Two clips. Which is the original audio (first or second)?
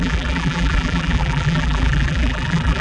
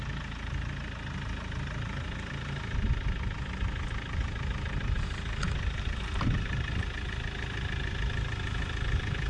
second